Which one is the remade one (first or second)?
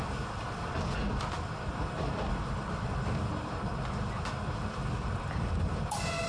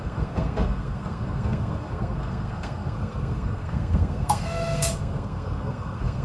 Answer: second